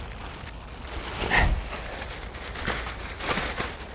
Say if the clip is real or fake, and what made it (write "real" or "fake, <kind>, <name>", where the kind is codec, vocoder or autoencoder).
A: real